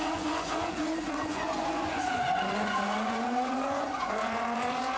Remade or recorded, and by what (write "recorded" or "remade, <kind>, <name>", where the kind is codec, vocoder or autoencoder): remade, vocoder, Vocos